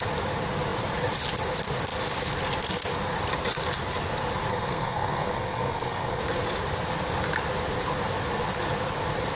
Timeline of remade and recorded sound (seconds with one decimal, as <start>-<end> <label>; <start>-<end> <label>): 0.0-4.5 recorded; 4.5-6.2 remade; 6.2-9.4 recorded